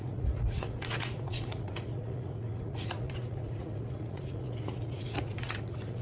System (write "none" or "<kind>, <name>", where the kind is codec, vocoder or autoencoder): vocoder, Vocos